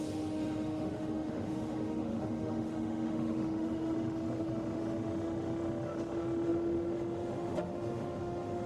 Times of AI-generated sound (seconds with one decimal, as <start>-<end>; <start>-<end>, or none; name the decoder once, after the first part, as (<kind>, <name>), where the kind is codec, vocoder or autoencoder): 0.0-8.7 (autoencoder, DAC-VAE)